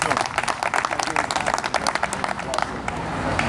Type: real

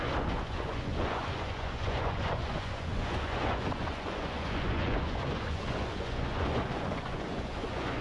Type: fake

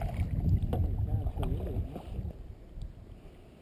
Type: real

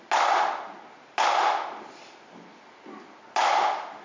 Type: real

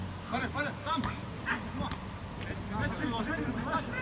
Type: real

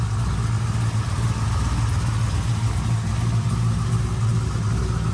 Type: real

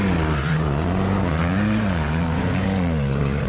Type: fake